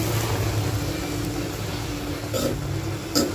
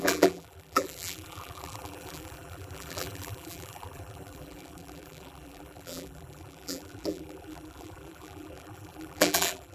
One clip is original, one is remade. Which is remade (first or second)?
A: second